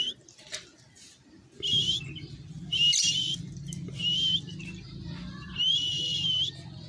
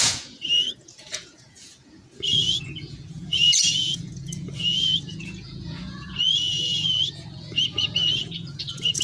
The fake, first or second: second